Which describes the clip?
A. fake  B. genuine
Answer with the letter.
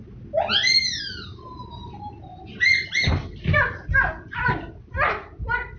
B